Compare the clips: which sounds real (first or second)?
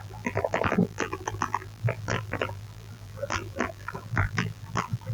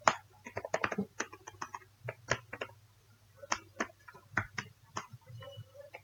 second